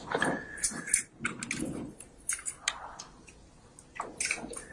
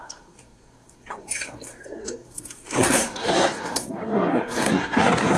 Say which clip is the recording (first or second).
first